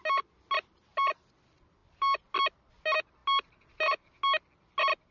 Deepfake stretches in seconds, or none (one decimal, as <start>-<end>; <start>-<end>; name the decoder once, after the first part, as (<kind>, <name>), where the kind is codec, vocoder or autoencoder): none